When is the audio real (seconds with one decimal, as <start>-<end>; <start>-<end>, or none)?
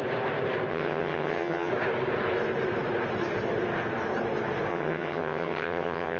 0.0-0.7; 1.7-4.7